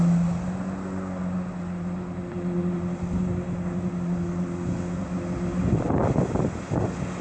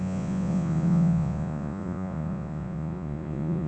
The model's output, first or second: second